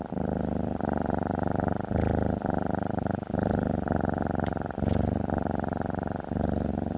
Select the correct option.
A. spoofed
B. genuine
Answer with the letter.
B